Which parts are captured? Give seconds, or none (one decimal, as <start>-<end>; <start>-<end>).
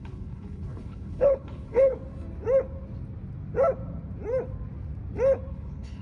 1.9-5.5